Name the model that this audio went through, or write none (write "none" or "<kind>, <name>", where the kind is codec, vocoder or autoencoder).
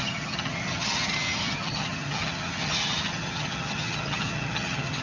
vocoder, HiFi-GAN